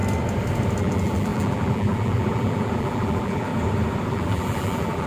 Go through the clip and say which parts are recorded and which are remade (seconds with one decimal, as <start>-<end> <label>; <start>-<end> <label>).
0.0-0.8 recorded; 0.8-3.5 remade; 3.5-4.1 recorded; 4.1-5.1 remade